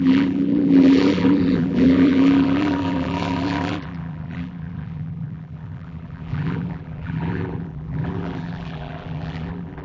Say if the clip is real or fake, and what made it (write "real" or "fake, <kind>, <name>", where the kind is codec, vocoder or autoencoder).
fake, vocoder, BigVGAN v2